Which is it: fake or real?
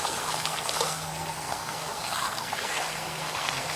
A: fake